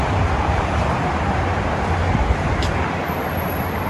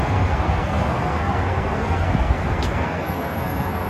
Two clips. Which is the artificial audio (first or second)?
second